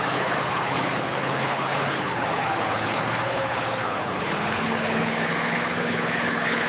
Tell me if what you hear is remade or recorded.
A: remade